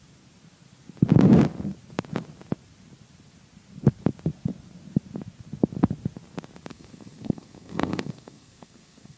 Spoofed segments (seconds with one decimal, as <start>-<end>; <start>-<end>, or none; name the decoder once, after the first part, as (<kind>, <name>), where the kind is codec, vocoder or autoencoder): 6.7-9.2 (codec, SNAC)